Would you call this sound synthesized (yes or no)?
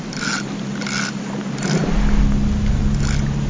no